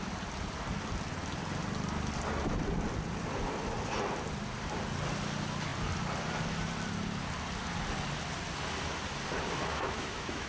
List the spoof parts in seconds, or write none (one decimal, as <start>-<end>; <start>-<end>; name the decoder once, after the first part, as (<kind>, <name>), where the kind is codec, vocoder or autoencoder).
9.7-10.5 (autoencoder, DAC-VAE)